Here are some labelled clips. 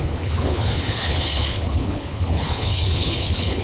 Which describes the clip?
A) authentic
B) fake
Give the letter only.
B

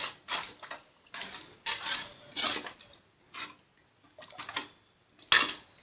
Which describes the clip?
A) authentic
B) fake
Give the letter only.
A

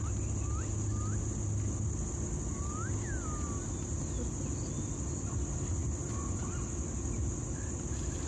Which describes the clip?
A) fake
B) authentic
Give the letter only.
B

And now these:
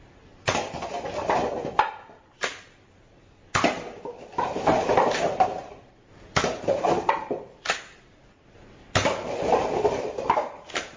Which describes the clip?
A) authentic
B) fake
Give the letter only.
A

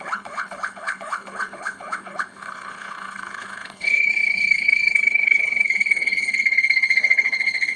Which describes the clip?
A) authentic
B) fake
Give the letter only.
B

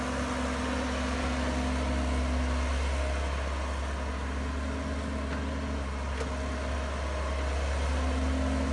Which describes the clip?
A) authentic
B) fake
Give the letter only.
A